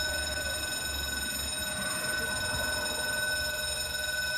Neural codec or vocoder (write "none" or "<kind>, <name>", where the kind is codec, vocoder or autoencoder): none